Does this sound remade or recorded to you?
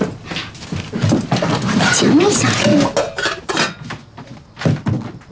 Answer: recorded